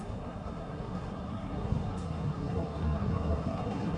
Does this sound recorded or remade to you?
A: remade